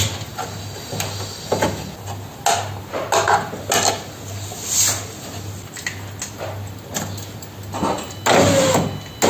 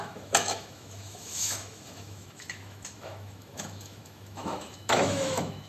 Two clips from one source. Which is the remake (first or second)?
second